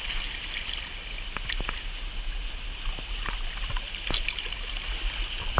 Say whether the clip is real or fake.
real